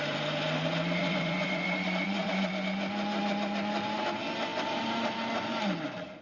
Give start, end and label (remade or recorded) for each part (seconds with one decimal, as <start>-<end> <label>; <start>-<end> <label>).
0.0-1.0 recorded; 1.0-2.5 remade; 2.5-6.2 recorded